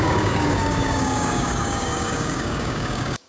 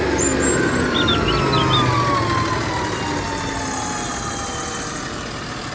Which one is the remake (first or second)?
first